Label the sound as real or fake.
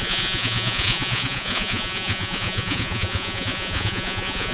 fake